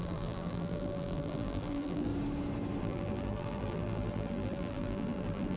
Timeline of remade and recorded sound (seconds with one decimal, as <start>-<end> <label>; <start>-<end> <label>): 0.0-2.1 remade; 2.1-2.8 recorded; 2.8-5.6 remade